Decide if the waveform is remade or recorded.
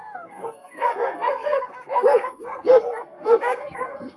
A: remade